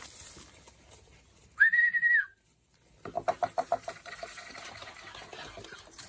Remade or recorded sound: recorded